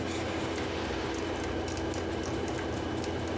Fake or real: real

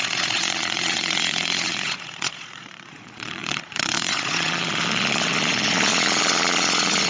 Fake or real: fake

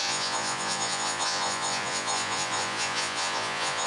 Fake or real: fake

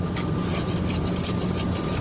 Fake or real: real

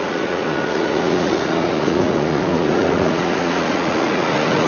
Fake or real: fake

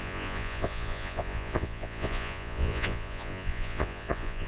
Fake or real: fake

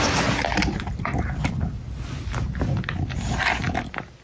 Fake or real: real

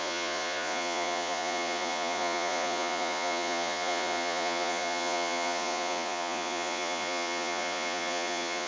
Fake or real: fake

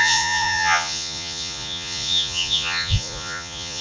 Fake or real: fake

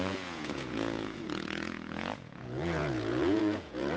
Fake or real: fake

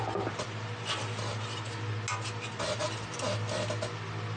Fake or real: real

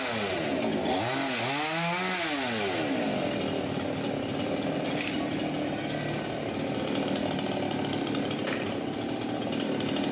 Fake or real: real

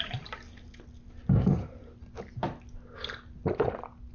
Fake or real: real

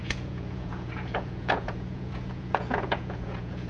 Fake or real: fake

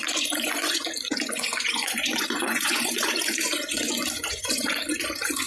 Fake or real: fake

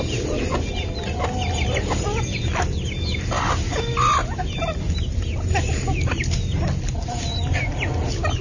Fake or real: real